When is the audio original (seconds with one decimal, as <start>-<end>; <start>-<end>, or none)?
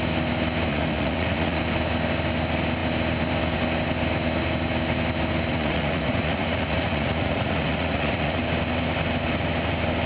0.0-0.7; 1.6-5.5; 8.4-10.1